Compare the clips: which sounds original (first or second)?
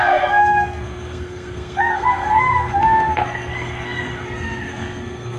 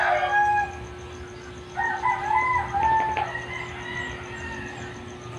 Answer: second